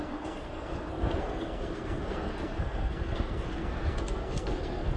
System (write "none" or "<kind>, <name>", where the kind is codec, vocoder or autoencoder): codec, SNAC